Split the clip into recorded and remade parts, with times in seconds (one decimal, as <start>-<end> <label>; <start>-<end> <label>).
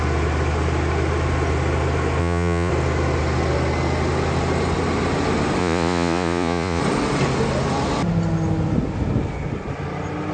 0.0-2.2 recorded; 2.2-2.7 remade; 2.7-5.6 recorded; 5.6-6.8 remade; 6.8-10.3 recorded